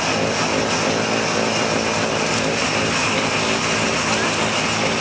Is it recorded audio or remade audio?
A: recorded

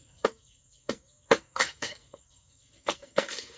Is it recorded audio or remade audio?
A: remade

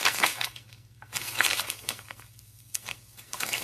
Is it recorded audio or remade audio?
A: remade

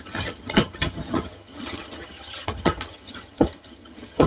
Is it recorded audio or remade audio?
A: remade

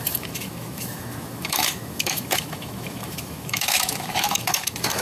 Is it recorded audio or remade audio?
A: remade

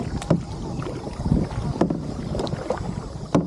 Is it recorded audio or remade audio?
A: recorded